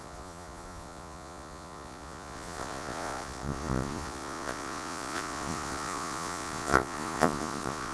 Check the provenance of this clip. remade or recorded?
remade